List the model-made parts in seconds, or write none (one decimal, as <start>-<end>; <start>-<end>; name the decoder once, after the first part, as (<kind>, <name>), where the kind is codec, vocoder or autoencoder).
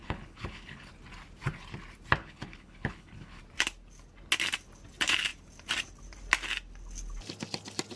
0.0-0.9 (codec, HILCodec); 2.2-3.4